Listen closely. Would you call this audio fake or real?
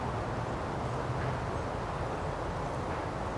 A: real